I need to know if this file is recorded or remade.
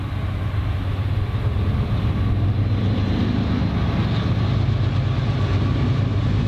recorded